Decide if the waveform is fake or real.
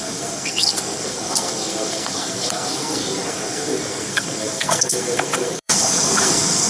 fake